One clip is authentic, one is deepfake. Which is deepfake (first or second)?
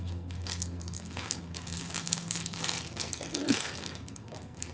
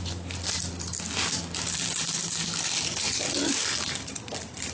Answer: first